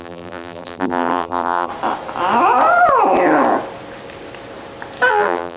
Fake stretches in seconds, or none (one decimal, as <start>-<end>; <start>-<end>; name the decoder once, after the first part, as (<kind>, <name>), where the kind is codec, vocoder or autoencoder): 0.0-1.7 (vocoder, BigVGAN v2); 5.1-5.6

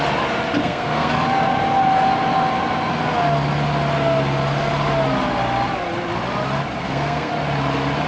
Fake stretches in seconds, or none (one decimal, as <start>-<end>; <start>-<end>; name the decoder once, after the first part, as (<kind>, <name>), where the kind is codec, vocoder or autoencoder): 0.6-1.1 (codec, SNAC); 6.8-7.3

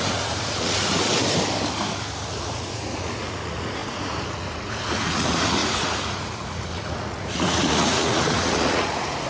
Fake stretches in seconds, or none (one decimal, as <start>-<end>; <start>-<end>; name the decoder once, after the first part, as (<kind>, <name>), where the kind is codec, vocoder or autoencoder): 0.0-1.1 (vocoder, Vocos); 2.3-9.3

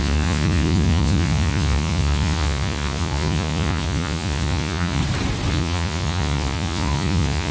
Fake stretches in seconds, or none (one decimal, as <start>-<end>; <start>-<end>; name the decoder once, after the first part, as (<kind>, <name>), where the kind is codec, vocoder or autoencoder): 0.0-5.0 (vocoder, Vocos); 5.5-7.5